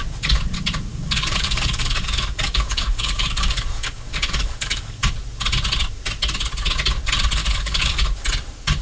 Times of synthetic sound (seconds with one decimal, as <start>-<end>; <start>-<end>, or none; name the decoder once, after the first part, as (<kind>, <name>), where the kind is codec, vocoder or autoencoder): 0.9-5.0 (codec, DAC); 7.4-8.0